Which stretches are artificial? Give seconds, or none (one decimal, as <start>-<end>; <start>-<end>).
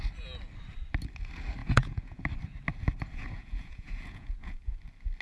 1.6-2.2; 3.4-4.8